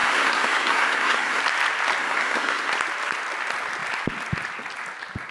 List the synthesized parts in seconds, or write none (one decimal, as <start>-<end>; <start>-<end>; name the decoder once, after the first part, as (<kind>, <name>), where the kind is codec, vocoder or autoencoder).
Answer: 0.0-1.4 (codec, SNAC); 2.0-2.7